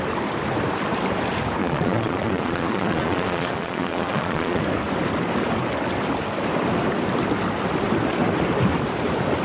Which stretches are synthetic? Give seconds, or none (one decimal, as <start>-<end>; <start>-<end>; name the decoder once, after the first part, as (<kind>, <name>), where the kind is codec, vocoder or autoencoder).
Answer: 1.6-4.6 (vocoder, Vocos)